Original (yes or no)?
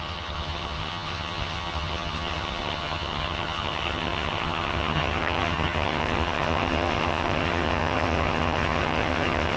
no